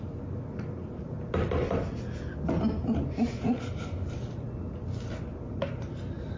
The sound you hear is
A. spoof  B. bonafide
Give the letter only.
B